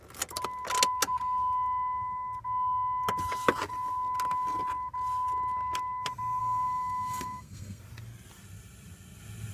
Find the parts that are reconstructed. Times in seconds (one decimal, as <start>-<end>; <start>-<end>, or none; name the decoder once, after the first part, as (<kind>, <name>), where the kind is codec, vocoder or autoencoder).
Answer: 6.4-7.8 (codec, SNAC)